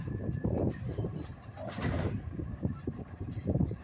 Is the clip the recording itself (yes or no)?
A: no